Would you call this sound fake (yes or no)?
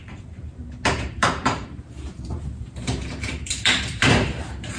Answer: yes